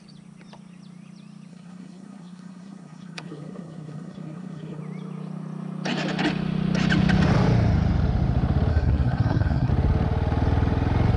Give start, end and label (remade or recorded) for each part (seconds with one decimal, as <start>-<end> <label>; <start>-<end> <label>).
0.0-1.5 recorded; 1.5-4.8 remade; 4.8-8.7 recorded; 8.7-9.7 remade; 9.7-11.2 recorded